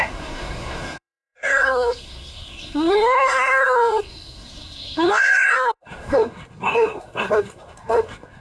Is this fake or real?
fake